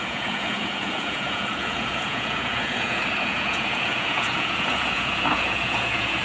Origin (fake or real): fake